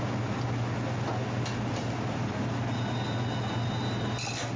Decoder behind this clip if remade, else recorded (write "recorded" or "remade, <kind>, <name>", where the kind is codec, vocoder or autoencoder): recorded